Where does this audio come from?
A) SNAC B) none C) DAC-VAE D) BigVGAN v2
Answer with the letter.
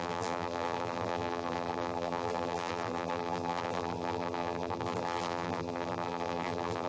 D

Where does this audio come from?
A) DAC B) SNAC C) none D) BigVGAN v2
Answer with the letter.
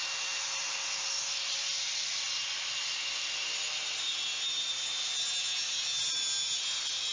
C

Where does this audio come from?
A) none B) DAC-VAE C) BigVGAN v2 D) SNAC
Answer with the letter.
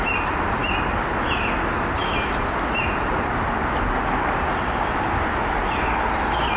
A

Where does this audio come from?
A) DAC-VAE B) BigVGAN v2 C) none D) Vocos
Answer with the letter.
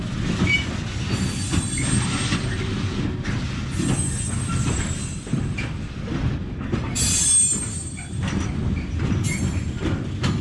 C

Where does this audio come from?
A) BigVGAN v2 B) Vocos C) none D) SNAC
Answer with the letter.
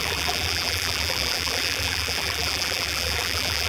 A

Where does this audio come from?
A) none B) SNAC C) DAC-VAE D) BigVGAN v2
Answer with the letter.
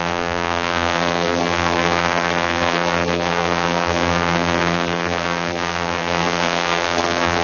D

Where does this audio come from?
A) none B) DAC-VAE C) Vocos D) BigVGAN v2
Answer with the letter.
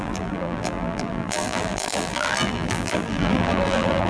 D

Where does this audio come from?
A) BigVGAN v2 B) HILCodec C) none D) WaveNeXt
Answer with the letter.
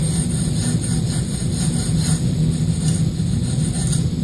C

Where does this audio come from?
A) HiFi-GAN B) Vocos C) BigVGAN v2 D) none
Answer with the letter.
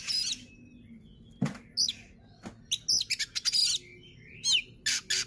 D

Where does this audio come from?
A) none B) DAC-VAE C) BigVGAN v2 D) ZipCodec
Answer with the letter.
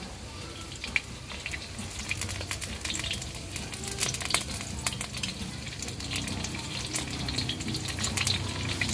A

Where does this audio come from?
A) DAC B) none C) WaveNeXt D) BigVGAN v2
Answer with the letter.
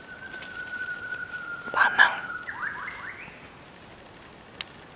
B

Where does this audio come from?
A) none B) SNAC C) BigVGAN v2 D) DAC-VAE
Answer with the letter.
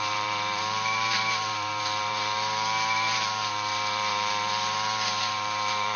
C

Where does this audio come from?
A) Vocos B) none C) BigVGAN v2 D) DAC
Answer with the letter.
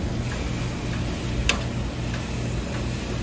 B